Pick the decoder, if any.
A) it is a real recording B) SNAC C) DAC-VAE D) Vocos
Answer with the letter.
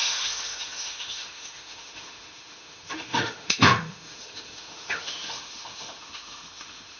C